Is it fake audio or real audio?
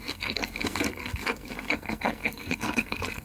fake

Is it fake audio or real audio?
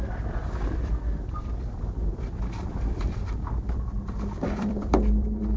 fake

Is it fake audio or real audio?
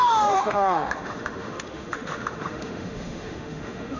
fake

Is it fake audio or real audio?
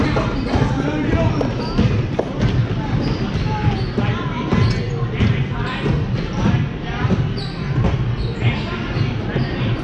real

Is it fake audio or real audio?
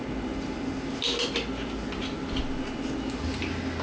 real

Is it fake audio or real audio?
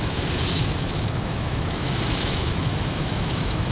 fake